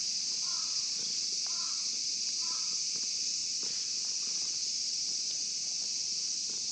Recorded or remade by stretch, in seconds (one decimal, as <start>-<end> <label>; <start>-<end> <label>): 0.0-6.7 recorded